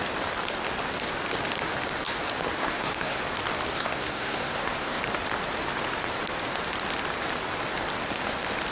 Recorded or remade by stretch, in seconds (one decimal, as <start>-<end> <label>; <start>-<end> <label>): 0.0-2.6 recorded; 2.6-3.2 remade; 3.2-3.7 recorded; 3.7-5.0 remade; 5.0-8.7 recorded

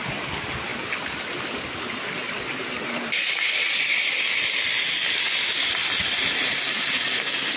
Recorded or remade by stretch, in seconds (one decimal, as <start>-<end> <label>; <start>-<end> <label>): 0.0-7.6 recorded

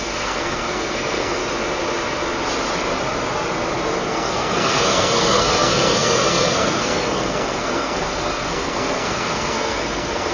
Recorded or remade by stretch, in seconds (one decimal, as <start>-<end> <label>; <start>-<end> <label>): 0.0-1.4 remade; 1.4-4.1 recorded; 4.1-10.3 remade